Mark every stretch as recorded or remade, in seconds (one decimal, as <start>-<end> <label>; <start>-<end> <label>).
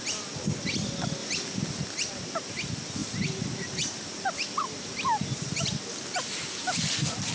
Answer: 0.0-7.3 recorded